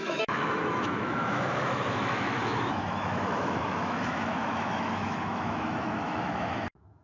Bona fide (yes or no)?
no